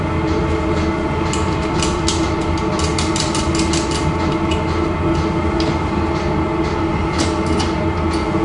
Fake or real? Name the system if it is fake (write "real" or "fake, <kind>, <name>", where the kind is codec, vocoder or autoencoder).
real